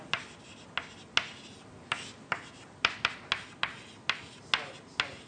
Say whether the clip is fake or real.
real